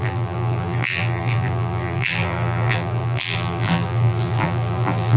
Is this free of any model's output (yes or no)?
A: no